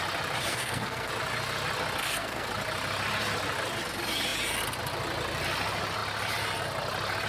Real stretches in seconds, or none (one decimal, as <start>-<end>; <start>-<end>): 0.0-0.5; 1.1-2.0; 2.5-7.3